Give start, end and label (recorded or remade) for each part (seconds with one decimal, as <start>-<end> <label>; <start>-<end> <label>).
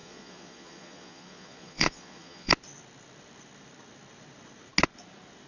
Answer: 0.0-2.5 remade; 2.5-5.5 recorded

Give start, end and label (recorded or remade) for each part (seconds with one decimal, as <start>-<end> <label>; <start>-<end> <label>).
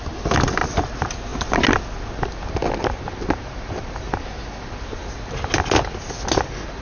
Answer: 0.0-6.8 recorded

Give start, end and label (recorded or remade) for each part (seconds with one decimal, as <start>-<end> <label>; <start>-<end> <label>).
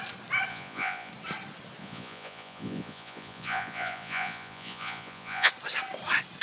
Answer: 0.0-0.5 recorded; 0.5-1.1 remade; 1.1-1.8 recorded; 1.8-5.5 remade; 5.5-6.4 recorded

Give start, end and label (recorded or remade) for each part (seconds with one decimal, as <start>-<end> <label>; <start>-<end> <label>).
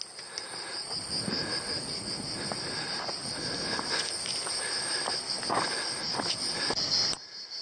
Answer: 0.0-7.6 recorded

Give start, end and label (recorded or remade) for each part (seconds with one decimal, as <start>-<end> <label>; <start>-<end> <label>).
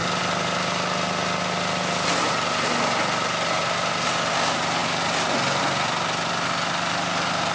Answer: 0.0-7.5 recorded